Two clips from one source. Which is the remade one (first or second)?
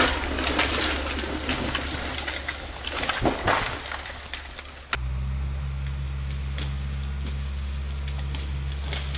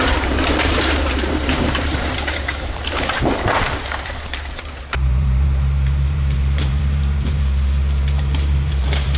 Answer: second